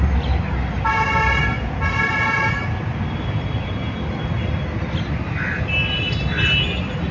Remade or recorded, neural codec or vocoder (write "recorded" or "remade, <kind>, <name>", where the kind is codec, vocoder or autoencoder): recorded